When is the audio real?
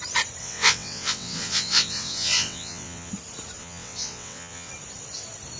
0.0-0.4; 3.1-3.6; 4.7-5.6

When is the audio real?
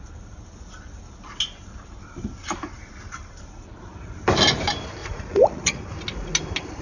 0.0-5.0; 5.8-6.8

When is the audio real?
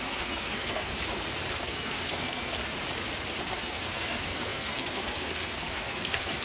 0.9-1.5; 2.6-3.4